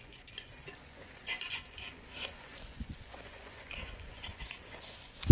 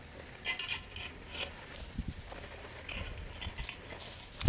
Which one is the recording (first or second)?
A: second